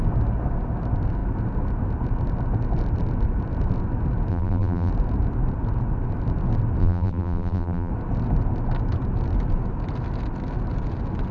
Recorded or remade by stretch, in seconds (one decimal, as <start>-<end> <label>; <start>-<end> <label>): 0.0-4.3 recorded; 4.3-4.9 remade; 4.9-6.8 recorded; 6.8-7.9 remade; 7.9-11.3 recorded